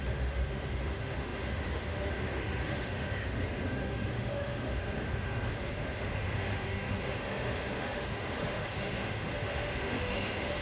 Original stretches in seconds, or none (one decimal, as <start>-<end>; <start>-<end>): none